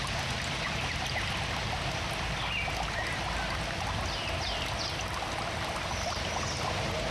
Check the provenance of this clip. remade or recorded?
recorded